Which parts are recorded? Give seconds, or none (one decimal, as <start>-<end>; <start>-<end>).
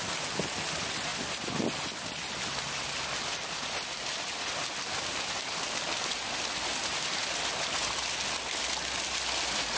0.0-9.8